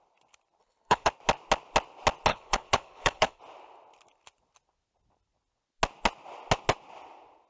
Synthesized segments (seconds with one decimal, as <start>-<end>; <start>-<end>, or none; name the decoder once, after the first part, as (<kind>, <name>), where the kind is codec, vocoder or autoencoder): 0.6-1.1 (codec, HILCodec); 2.3-3.4